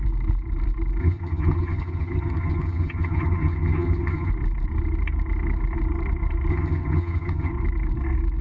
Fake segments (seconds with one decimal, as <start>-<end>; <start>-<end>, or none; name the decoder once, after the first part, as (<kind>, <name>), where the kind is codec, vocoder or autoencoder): 1.0-4.3 (vocoder, HiFi-GAN); 6.5-7.5